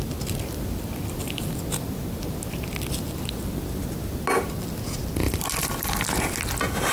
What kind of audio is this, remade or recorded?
recorded